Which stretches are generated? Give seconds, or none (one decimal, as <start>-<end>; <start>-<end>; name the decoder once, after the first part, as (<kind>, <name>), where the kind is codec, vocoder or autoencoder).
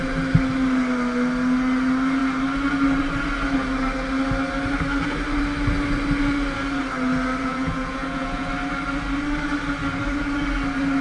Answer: 7.4-8.5 (vocoder, Vocos)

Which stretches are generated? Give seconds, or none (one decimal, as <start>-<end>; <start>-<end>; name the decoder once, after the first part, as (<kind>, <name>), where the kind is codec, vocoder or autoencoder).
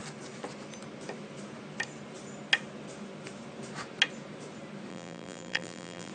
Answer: 4.9-6.1 (vocoder, BigVGAN v2)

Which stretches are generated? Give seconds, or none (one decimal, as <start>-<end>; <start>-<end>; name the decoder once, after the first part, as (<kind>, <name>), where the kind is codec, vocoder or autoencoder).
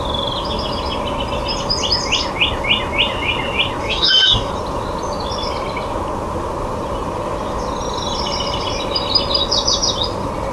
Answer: 3.8-4.5 (codec, DAC)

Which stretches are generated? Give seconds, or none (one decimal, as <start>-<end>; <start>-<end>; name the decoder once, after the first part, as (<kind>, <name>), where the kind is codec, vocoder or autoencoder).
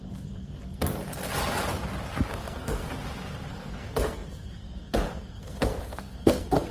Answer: 0.0-0.9 (codec, SNAC); 2.3-2.9; 3.5-6.7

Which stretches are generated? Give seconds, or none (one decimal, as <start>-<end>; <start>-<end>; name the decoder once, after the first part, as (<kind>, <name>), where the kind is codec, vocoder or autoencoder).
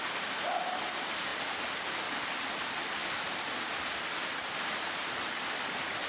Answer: 1.3-2.0 (vocoder, BigVGAN v2)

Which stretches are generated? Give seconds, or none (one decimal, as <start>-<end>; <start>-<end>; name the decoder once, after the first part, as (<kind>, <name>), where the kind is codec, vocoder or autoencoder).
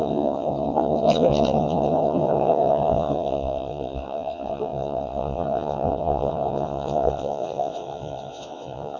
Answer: 0.0-9.0 (vocoder, WaveNeXt)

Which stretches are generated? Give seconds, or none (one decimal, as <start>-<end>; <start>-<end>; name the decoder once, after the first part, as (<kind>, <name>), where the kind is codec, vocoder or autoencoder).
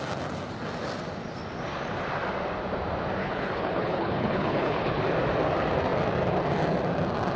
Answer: 3.2-5.0 (codec, HILCodec)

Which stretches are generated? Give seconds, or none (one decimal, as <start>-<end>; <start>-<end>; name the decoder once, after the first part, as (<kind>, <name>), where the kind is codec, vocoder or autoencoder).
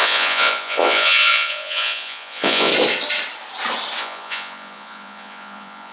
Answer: 0.0-2.7 (vocoder, Vocos); 4.0-5.9